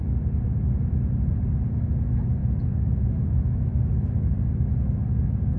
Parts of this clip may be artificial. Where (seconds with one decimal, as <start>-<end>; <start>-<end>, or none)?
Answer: 2.4-4.3